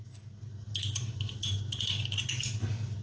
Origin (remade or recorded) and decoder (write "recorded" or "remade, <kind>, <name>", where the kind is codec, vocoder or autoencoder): recorded